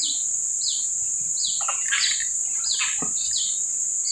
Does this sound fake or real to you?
fake